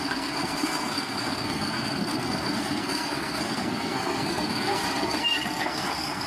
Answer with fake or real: fake